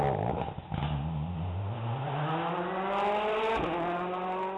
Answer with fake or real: real